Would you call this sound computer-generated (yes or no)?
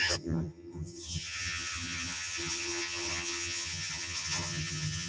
yes